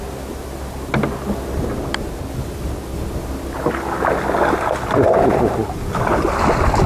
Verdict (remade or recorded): recorded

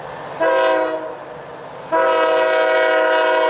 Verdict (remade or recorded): recorded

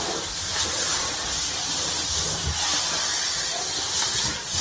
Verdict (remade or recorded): recorded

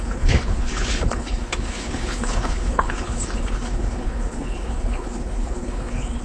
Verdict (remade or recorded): remade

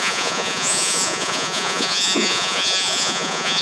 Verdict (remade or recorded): remade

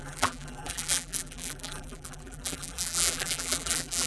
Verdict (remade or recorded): remade